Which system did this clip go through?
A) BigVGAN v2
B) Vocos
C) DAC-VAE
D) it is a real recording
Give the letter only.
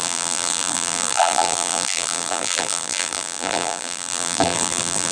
A